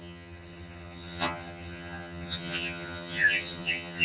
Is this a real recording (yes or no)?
no